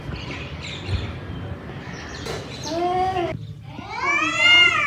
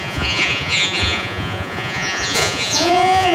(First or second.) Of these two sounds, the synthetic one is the second